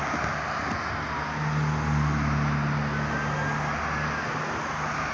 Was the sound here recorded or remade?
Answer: recorded